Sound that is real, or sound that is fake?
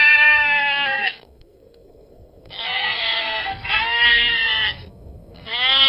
fake